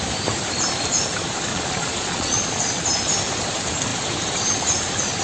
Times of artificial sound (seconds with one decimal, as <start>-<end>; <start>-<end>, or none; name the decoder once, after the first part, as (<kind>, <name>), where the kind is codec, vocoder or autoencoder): 1.5-2.8 (vocoder, Vocos)